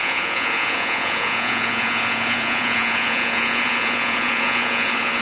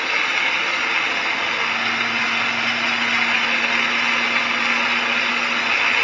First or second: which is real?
second